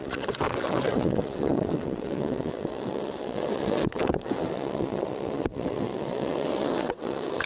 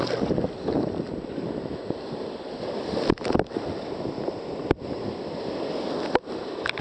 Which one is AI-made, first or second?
first